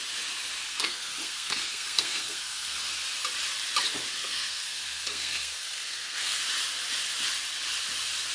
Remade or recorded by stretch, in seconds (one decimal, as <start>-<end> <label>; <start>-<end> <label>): 0.0-0.7 recorded; 0.7-2.8 remade; 2.8-4.1 recorded; 4.1-6.4 remade; 6.4-8.3 recorded